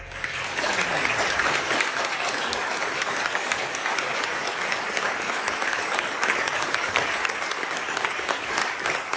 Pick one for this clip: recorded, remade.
remade